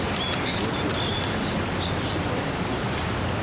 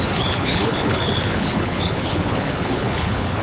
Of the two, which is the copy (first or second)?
second